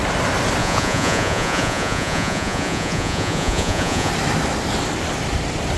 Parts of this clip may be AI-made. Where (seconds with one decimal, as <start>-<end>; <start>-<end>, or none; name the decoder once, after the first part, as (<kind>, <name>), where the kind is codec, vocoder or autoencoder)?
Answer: 0.6-4.1 (vocoder, Vocos)